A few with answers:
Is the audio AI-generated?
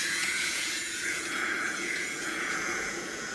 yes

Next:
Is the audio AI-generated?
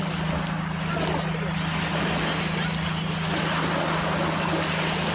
no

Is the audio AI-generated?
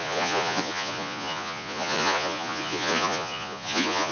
yes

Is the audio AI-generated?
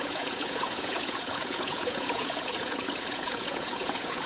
yes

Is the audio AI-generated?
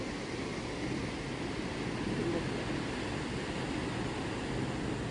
no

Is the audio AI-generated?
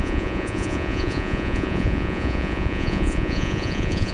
yes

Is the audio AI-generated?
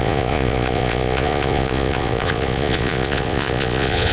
yes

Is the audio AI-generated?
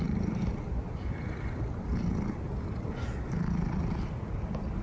no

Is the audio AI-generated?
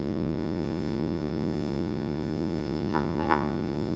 yes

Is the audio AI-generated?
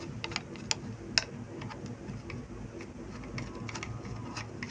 no